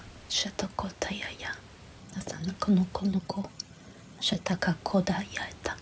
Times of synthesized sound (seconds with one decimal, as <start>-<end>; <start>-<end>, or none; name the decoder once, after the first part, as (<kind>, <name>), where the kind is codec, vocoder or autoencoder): 2.0-2.5 (vocoder, HiFi-GAN); 3.0-4.6